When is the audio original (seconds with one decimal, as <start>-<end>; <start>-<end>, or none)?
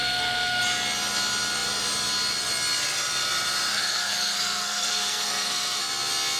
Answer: 0.6-3.7; 5.8-6.4